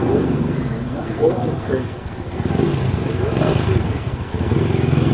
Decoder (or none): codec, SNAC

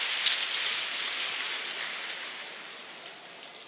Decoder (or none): none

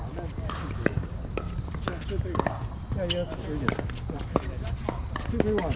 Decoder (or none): none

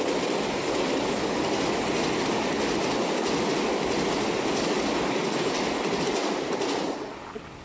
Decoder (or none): none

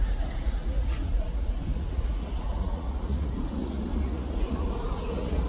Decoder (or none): vocoder, Vocos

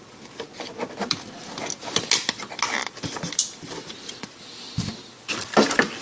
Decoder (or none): none